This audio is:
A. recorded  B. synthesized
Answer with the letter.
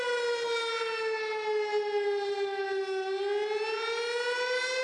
A